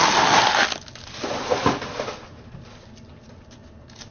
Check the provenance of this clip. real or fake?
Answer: real